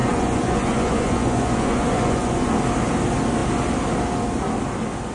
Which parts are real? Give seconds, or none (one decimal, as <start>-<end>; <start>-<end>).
2.5-5.1